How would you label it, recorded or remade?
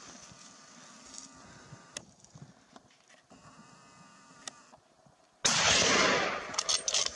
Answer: recorded